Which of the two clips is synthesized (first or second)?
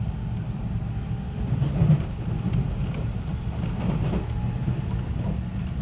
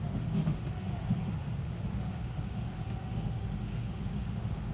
second